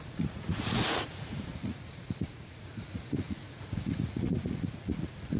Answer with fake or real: fake